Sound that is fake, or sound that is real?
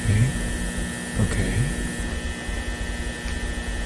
real